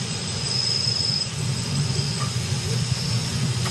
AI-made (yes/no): yes